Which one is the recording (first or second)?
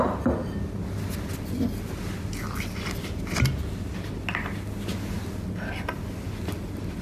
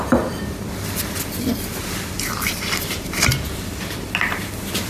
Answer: first